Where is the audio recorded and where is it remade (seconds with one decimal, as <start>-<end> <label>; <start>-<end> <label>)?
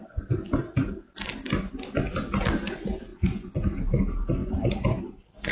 0.0-3.1 recorded; 3.1-3.8 remade; 3.8-5.5 recorded